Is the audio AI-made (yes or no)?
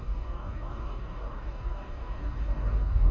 yes